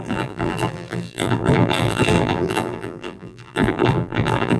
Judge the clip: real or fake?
fake